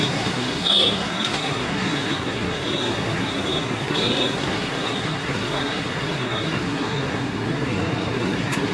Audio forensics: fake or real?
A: fake